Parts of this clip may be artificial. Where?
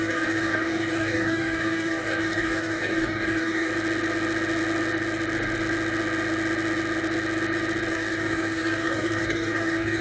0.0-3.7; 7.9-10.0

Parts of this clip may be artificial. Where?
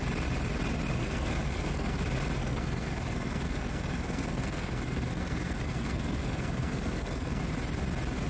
1.0-2.0; 2.4-7.4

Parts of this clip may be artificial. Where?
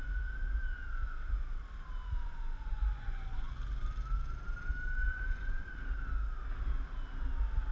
2.0-3.5; 5.0-5.7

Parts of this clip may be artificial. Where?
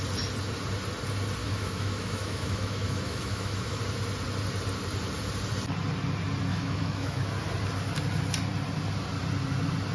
1.4-3.8; 6.5-7.2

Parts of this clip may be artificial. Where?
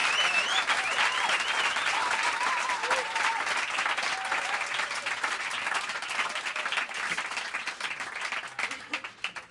none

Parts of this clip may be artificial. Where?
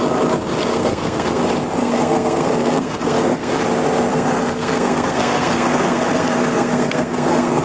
0.7-1.4; 1.8-3.5; 4.1-7.6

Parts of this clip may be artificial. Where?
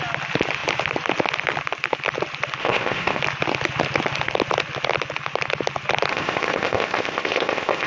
2.6-3.2; 6.1-7.9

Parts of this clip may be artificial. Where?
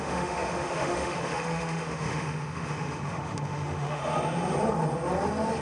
0.0-4.0